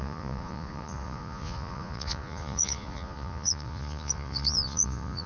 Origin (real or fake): fake